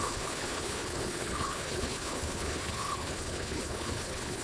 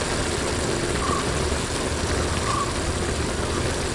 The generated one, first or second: first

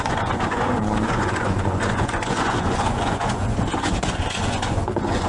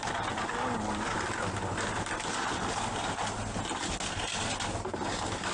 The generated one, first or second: first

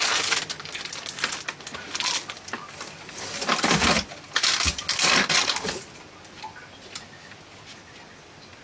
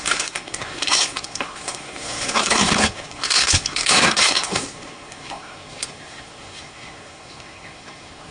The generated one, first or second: second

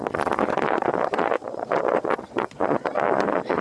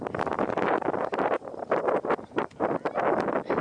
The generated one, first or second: first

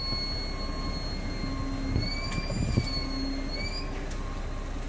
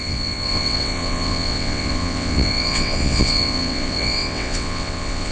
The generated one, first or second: second